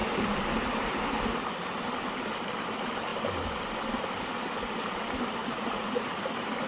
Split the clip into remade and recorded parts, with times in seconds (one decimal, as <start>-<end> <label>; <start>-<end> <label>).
0.0-5.4 recorded; 5.4-6.3 remade; 6.3-6.7 recorded